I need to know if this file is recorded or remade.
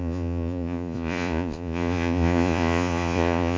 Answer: remade